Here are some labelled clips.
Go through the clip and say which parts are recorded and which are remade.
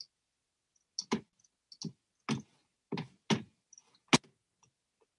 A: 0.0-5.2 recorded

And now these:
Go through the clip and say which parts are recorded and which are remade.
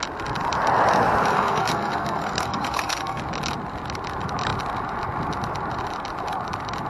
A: 0.0-1.3 recorded; 1.3-3.2 remade; 3.2-6.9 recorded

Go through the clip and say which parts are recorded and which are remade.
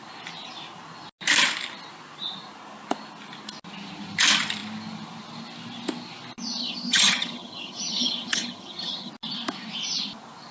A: 0.0-6.6 recorded; 6.6-9.1 remade; 9.1-10.5 recorded